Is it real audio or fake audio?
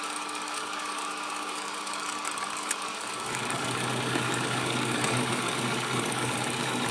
fake